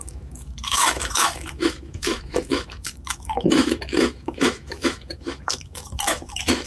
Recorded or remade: remade